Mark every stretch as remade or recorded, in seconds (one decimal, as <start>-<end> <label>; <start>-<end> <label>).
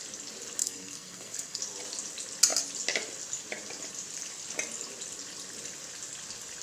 0.0-0.6 recorded; 0.6-1.6 remade; 1.6-6.6 recorded